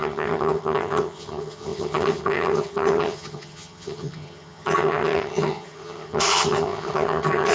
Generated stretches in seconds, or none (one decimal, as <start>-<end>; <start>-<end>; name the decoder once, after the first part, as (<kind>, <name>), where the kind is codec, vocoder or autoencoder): 0.0-7.5 (vocoder, HiFi-GAN)